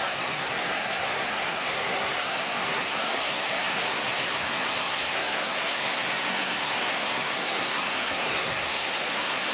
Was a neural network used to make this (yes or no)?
yes